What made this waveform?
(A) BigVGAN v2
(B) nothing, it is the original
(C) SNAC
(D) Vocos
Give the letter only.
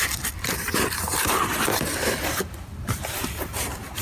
A